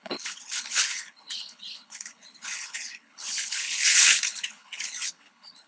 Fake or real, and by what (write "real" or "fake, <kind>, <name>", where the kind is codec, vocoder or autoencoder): fake, codec, HILCodec